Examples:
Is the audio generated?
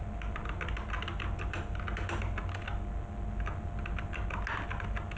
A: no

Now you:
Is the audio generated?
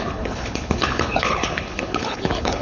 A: yes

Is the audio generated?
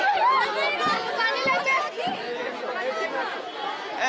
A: no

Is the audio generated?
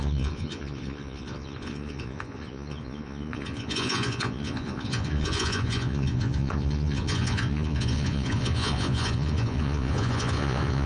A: yes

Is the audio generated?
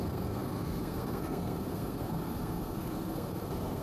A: yes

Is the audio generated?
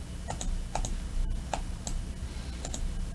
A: no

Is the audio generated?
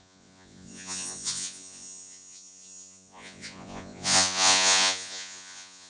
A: yes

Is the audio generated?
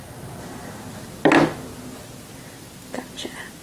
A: no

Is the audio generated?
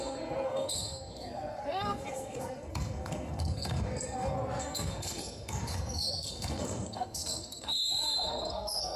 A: yes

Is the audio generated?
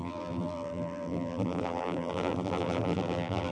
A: yes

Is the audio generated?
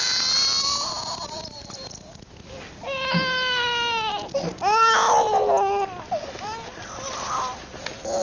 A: no